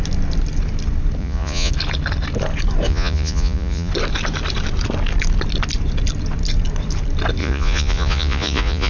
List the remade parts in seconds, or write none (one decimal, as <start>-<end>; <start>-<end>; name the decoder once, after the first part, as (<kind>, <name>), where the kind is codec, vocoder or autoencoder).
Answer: 1.2-1.7 (vocoder, Vocos); 2.9-3.9; 7.4-8.9